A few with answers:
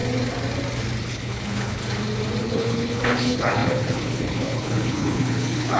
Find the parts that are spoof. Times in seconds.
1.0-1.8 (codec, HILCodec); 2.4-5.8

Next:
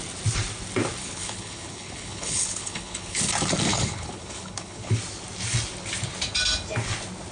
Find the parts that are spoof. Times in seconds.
1.0-3.2 (codec, HILCodec); 3.7-5.0

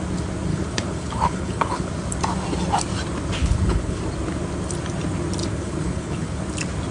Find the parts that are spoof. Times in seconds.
0.5-1.9 (codec, HILCodec); 3.4-4.0; 5.4-6.4

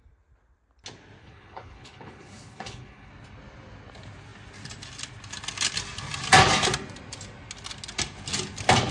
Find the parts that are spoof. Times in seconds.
1.2-3.1 (codec, HILCodec)

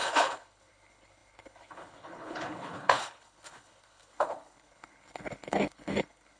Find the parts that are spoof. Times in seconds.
0.0-6.4 (codec, HILCodec)

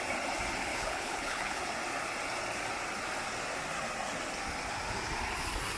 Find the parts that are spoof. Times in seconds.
0.6-1.6 (codec, HILCodec)